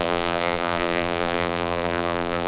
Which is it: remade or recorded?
remade